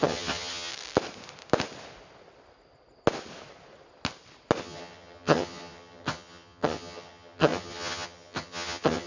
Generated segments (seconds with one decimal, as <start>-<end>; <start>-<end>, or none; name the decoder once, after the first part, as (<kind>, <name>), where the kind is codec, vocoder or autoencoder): 0.0-0.7 (vocoder, HiFi-GAN); 4.6-9.1